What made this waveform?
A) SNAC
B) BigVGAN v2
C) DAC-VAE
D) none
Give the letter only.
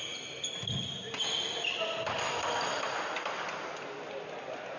D